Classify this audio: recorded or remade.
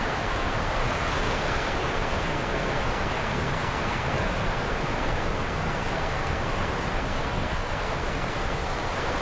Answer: remade